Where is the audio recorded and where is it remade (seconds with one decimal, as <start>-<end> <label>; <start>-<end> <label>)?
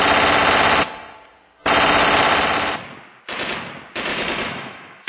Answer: 0.0-4.1 recorded; 4.1-5.1 remade